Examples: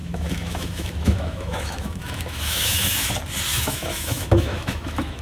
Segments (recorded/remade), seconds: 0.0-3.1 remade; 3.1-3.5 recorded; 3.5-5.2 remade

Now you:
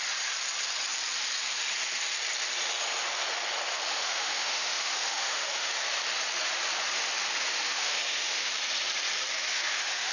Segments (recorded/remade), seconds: 0.0-3.7 recorded; 3.7-5.7 remade; 5.7-7.5 recorded; 7.5-8.5 remade; 8.5-9.3 recorded; 9.3-10.1 remade

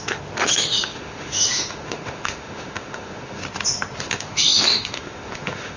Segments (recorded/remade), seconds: 0.0-3.4 remade; 3.4-4.0 recorded; 4.0-5.8 remade

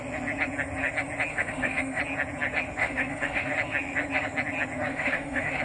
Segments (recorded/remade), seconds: 0.0-1.3 recorded; 1.3-2.0 remade; 2.0-2.8 recorded; 2.8-3.5 remade; 3.5-4.9 recorded; 4.9-5.6 remade

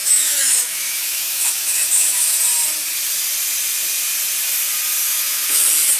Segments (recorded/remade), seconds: 0.0-2.4 remade; 2.4-5.1 recorded; 5.1-5.6 remade; 5.6-6.0 recorded

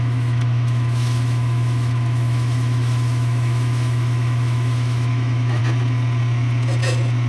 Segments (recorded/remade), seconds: 0.0-5.6 remade; 5.6-7.3 recorded

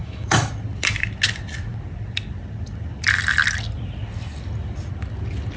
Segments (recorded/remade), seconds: 0.0-0.5 remade; 0.5-5.6 recorded

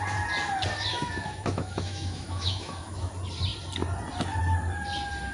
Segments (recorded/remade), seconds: 0.0-0.9 recorded; 0.9-3.1 remade; 3.1-5.3 recorded